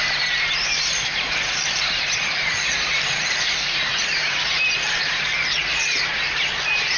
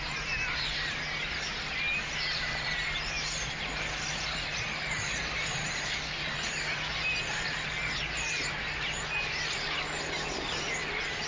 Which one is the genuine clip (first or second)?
second